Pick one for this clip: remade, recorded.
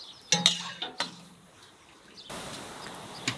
recorded